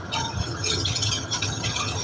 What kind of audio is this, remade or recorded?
remade